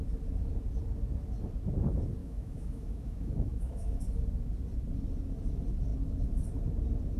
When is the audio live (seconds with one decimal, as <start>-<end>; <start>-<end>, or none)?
0.0-2.2; 4.0-7.2